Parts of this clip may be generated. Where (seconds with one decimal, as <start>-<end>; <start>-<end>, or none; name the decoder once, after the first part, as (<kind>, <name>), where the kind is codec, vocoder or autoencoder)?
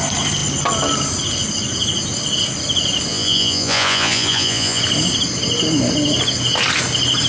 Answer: 3.1-4.8 (vocoder, Vocos)